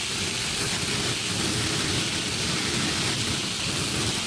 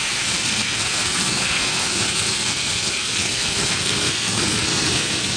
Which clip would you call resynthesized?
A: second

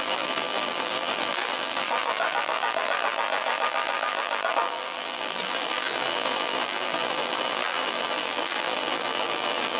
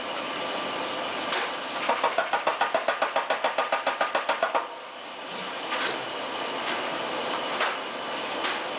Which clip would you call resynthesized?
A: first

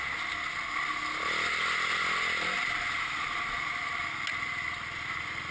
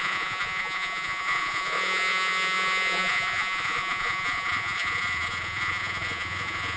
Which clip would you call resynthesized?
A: second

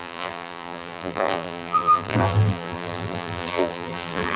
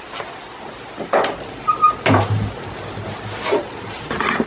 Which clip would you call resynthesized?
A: first